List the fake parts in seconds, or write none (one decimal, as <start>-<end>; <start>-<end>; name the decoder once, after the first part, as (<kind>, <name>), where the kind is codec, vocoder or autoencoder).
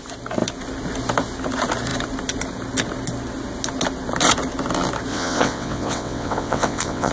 5.1-7.1 (vocoder, WaveNeXt)